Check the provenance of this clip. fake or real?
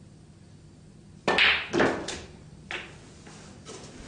real